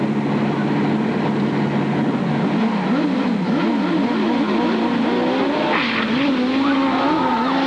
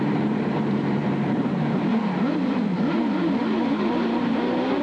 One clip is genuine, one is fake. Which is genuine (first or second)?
first